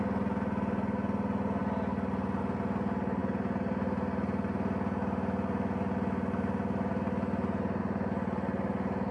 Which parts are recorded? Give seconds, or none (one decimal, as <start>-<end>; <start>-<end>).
0.0-9.1